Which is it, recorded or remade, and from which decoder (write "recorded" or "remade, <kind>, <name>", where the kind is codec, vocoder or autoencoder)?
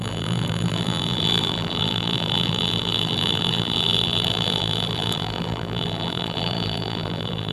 remade, vocoder, BigVGAN v2